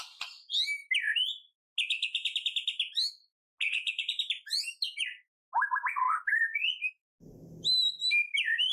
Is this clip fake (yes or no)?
no